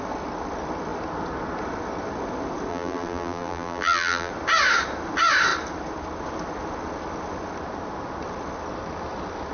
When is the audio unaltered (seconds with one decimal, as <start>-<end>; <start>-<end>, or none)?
0.0-2.7; 4.3-9.5